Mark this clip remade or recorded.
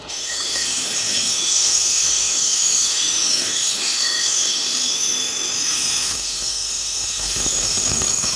remade